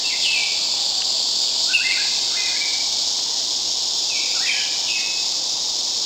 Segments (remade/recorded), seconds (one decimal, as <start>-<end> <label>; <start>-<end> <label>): 0.0-6.1 recorded